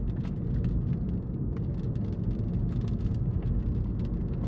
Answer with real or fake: real